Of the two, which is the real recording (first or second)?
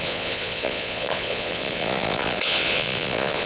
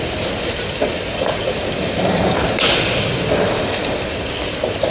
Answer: second